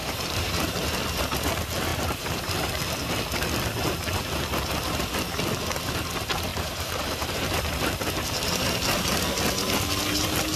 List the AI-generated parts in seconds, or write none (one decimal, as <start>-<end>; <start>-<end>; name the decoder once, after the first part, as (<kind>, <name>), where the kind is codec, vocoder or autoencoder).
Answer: 0.0-0.5 (vocoder, BigVGAN v2); 1.9-2.5; 6.5-7.7